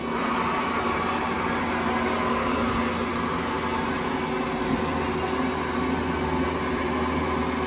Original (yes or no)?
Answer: yes